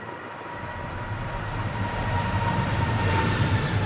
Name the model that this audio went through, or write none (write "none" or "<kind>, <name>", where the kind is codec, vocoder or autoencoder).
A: none